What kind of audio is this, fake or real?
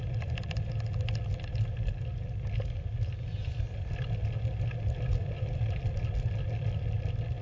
real